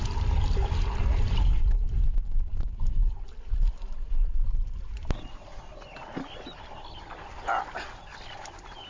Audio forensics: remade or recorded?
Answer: recorded